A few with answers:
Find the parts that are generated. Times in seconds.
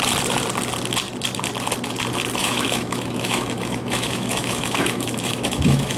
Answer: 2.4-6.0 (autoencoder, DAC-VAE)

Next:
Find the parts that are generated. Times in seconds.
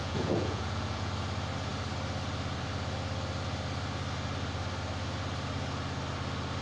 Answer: 0.0-1.1 (vocoder, Vocos)